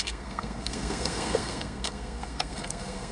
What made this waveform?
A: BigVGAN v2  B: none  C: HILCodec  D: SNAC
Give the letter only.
D